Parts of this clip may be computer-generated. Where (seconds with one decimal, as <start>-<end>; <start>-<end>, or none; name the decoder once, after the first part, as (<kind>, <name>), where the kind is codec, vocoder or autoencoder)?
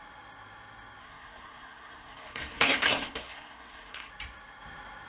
1.0-4.1 (codec, SNAC)